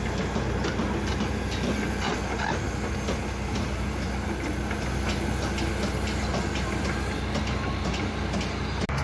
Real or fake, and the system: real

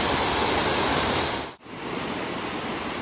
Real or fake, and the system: real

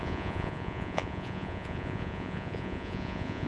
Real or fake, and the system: fake, vocoder, Vocos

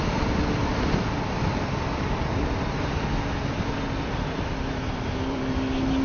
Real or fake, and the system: real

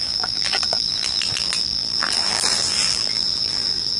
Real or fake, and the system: fake, vocoder, BigVGAN v2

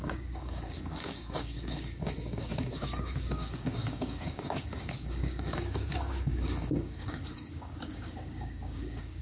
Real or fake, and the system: fake, codec, DAC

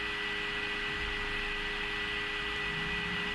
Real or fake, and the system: real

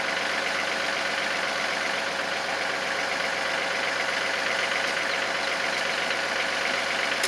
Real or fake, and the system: real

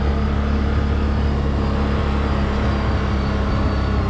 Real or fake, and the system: real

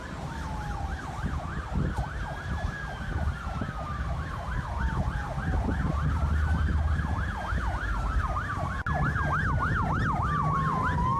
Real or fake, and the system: real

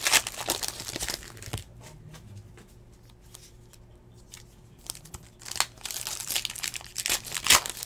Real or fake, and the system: real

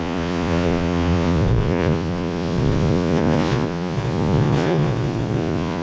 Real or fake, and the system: fake, vocoder, Vocos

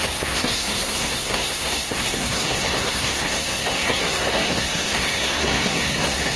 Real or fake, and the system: fake, codec, SNAC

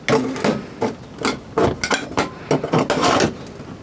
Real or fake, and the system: real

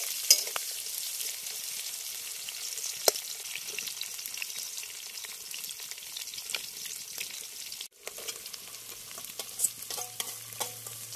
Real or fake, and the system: real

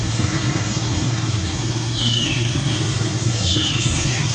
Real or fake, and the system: fake, codec, SNAC